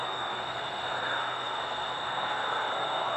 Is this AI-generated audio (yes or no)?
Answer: yes